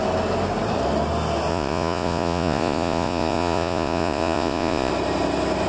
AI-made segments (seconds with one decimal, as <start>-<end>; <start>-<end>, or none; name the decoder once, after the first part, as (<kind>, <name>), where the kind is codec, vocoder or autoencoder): 1.5-4.9 (vocoder, Vocos)